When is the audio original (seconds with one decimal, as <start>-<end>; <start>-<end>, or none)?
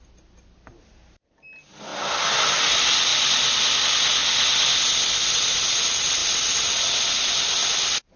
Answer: 0.0-8.2